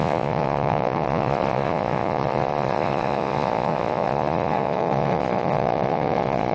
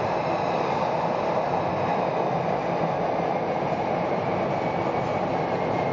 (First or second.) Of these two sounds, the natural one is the second